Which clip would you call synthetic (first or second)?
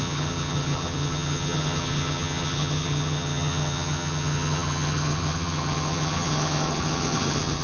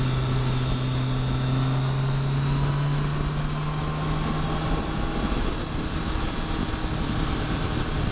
first